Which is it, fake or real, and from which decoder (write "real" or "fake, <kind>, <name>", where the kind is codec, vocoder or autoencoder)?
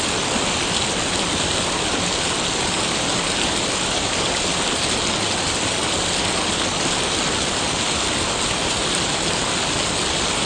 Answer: real